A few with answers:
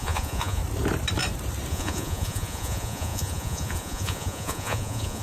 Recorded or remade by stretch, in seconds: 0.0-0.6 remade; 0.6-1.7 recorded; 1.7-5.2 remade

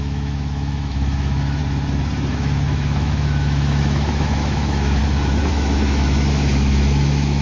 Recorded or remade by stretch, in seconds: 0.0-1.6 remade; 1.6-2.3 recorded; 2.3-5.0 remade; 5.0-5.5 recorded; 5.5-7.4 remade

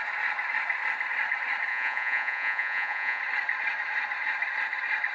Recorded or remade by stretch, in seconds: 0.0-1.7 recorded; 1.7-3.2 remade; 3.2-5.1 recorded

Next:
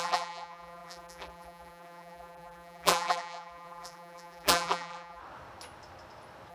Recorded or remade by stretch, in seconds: 0.0-5.2 remade; 5.2-6.5 recorded